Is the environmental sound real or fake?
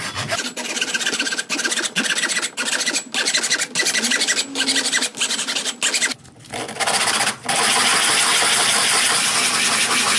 real